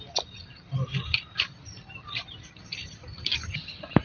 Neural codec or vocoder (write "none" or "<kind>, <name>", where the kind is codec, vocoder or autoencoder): none